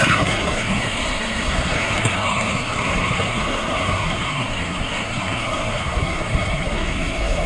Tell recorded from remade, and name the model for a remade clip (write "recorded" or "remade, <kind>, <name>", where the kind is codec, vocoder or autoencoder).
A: remade, codec, SNAC